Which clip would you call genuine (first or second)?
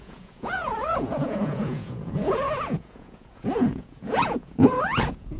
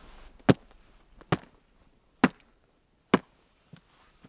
second